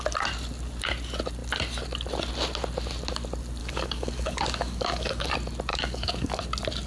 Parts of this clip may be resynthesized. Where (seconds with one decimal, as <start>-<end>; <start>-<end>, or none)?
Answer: 3.6-5.3; 5.7-6.4